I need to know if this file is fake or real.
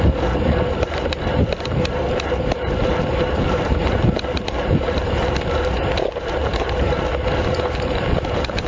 fake